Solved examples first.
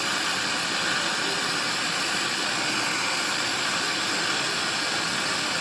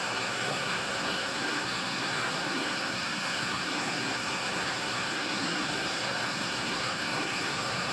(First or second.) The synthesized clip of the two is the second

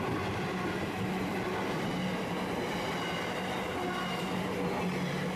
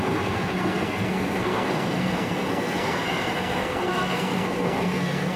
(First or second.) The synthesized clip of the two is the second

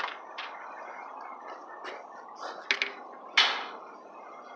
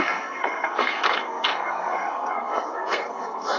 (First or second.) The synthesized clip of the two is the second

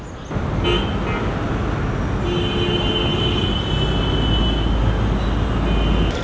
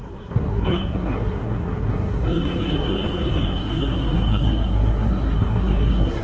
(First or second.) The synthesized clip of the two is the second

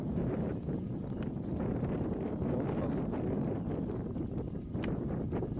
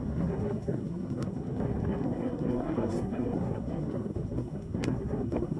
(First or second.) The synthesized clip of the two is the second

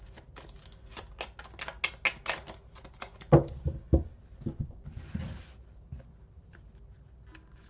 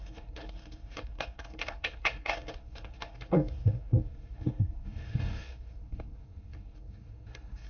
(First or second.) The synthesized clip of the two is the second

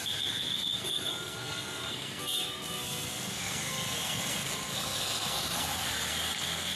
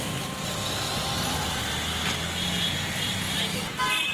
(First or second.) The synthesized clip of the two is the first